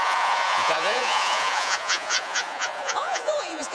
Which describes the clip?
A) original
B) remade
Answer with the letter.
B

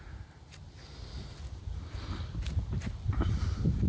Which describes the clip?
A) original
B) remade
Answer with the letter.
A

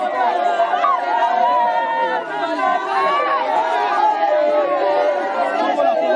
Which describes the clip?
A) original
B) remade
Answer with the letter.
A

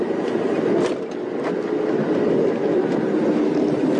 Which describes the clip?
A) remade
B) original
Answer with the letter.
B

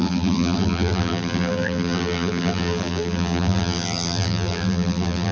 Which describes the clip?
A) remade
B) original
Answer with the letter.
A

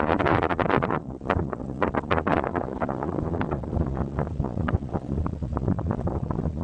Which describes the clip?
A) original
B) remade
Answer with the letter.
B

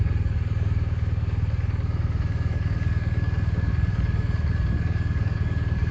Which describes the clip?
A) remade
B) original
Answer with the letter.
A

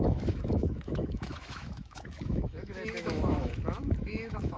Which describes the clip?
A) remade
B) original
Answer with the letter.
A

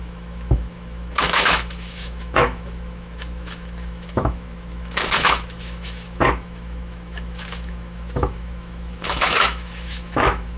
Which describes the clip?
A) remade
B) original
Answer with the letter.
A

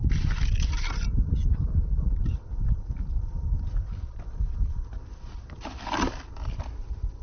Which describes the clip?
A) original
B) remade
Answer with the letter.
A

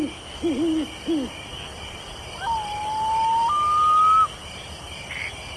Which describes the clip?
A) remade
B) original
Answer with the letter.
B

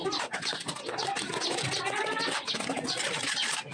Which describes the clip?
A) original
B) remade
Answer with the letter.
A